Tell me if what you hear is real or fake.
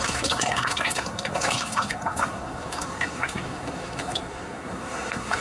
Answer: fake